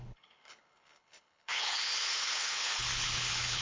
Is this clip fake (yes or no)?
yes